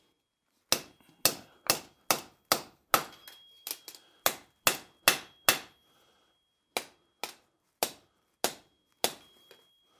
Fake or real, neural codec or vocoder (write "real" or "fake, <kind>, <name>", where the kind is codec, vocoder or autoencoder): real